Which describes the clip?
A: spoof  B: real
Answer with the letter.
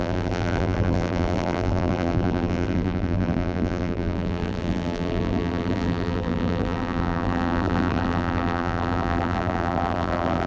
A